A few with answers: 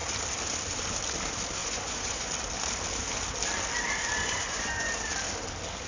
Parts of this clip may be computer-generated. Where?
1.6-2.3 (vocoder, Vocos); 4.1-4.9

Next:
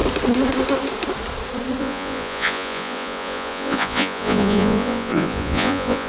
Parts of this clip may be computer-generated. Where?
1.8-6.1 (vocoder, Vocos)

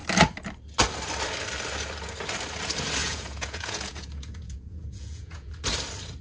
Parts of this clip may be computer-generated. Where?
3.0-5.5 (vocoder, Vocos)

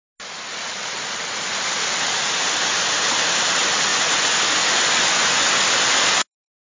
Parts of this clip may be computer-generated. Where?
3.9-5.6 (vocoder, Vocos)

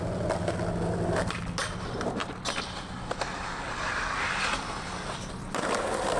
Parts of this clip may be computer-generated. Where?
none

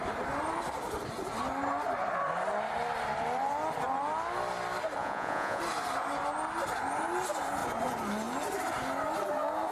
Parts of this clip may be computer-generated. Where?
5.0-5.6 (vocoder, Vocos)

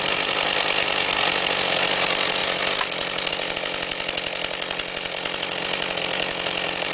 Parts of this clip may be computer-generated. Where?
none

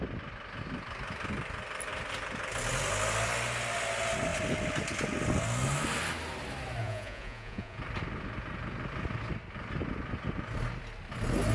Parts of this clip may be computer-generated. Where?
6.8-7.8 (vocoder, Vocos)